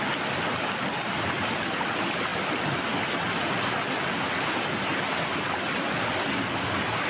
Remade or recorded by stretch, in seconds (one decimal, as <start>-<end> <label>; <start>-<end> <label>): 0.0-7.1 recorded